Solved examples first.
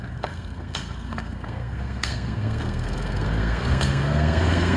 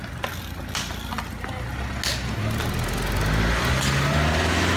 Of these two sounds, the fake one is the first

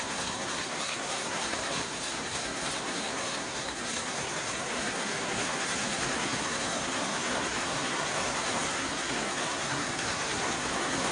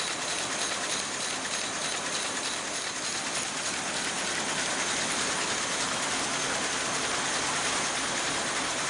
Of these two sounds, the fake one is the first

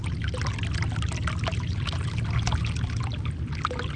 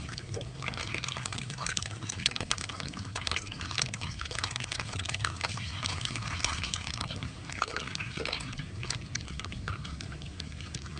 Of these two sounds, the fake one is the second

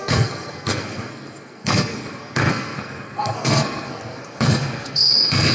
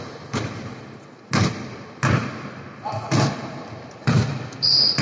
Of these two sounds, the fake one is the first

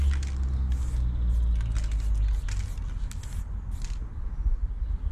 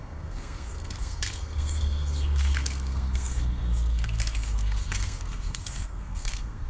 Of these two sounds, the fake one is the second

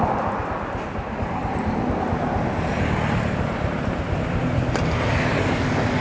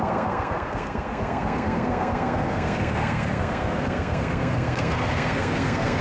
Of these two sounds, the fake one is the second